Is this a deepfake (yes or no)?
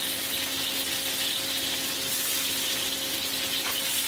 no